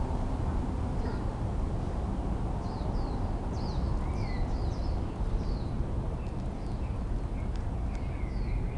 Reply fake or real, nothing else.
real